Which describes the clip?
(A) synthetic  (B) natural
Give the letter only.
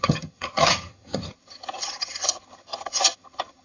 A